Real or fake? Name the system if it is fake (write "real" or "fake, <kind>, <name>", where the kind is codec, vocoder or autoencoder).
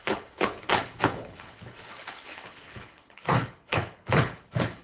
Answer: fake, codec, HILCodec